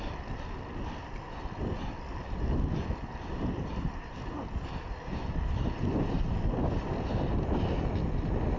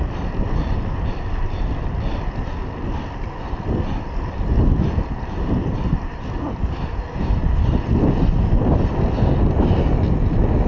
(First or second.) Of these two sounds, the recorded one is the second